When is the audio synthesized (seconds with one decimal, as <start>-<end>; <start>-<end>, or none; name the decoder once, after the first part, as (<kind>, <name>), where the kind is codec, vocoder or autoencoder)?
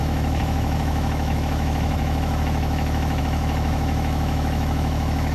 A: 0.0-5.3 (autoencoder, DAC-VAE)